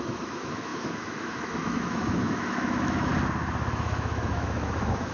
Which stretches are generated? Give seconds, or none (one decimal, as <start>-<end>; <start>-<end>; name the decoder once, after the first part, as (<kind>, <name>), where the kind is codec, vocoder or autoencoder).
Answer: 0.0-3.1 (autoencoder, DAC-VAE); 3.7-5.1